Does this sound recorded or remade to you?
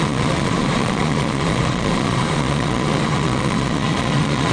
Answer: remade